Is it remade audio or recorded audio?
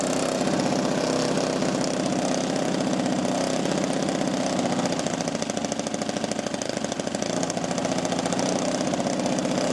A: recorded